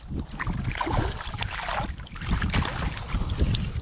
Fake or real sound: real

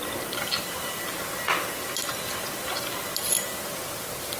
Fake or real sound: real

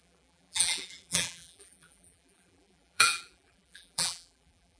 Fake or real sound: fake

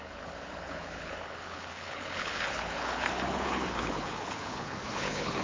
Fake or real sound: fake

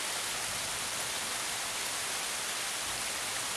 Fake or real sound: fake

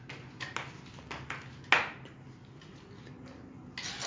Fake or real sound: real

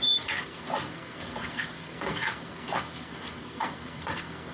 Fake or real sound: fake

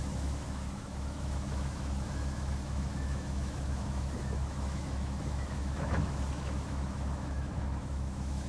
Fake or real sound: fake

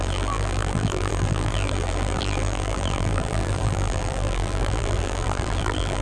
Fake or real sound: fake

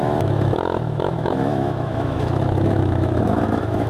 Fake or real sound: fake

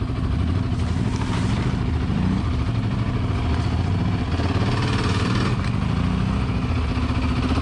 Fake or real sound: real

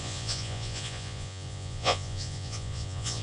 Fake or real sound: fake